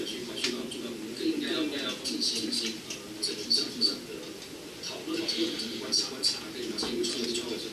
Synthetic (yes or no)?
no